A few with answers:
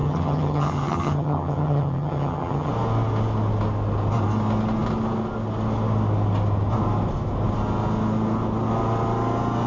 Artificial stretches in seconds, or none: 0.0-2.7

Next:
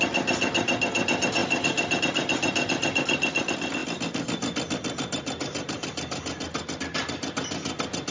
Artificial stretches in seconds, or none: none

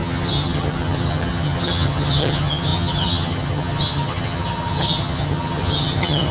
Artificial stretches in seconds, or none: 0.0-6.3

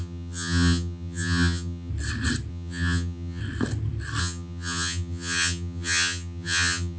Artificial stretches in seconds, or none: 0.0-1.9; 2.5-3.4; 4.2-7.0

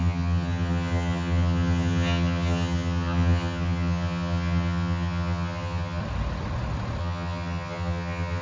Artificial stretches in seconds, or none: 0.0-6.0; 7.0-8.4

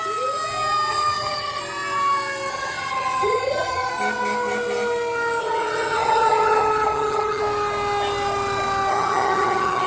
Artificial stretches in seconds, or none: 0.9-1.6; 2.5-3.9; 5.4-7.4; 8.9-9.9

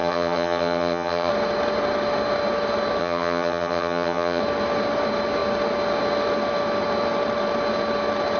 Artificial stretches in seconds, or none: 0.0-1.3; 3.0-4.4

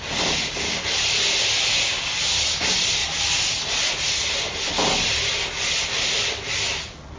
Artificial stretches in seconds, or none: none